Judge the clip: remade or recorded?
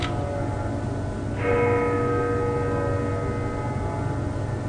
recorded